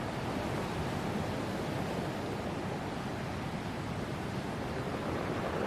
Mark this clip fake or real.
real